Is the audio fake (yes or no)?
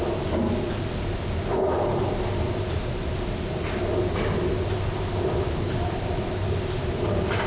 no